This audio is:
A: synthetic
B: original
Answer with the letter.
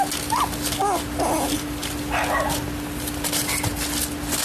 B